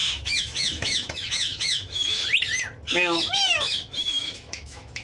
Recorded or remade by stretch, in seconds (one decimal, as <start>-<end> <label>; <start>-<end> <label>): 0.0-2.2 remade; 2.2-2.9 recorded; 2.9-5.0 remade